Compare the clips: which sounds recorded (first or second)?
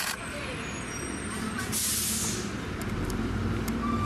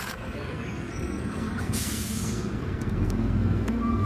first